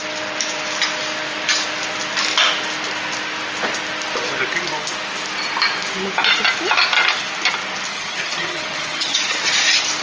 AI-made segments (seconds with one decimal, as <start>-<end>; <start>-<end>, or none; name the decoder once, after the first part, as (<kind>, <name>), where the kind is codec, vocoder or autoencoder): 7.9-9.4 (vocoder, HiFi-GAN)